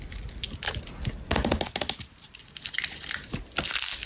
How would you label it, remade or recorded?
recorded